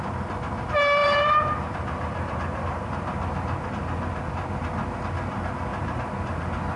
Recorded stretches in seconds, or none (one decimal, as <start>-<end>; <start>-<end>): 0.0-1.0; 4.3-5.7

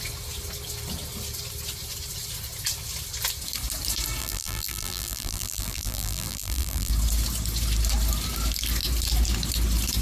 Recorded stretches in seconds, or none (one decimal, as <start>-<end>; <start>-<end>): 0.0-4.2; 6.9-10.0